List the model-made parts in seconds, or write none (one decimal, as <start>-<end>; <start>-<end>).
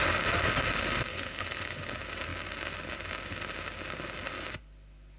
1.1-1.9